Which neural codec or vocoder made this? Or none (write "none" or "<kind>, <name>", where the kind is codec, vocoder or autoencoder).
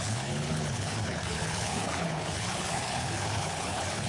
codec, HILCodec